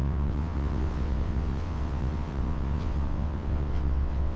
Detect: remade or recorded remade